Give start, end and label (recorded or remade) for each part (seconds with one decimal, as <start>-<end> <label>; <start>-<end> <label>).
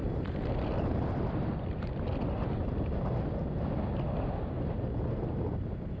0.0-6.0 recorded